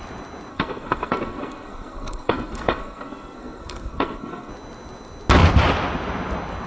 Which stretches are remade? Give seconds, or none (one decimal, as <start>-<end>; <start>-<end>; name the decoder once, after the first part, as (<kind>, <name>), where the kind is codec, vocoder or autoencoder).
0.5-4.5 (codec, SNAC)